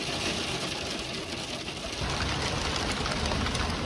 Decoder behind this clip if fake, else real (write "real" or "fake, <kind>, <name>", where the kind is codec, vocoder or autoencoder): real